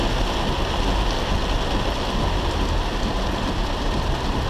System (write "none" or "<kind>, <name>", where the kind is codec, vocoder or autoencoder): none